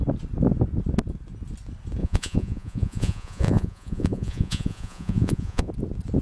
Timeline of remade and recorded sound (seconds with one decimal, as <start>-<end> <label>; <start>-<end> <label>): 0.0-2.0 recorded; 2.0-5.7 remade; 5.7-6.2 recorded